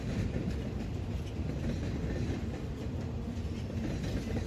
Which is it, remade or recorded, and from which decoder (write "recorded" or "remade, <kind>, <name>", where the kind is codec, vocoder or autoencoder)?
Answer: recorded